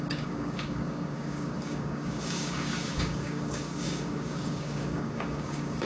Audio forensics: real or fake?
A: fake